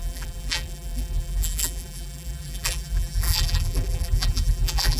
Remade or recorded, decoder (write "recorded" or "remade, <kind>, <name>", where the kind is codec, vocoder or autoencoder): remade, vocoder, BigVGAN v2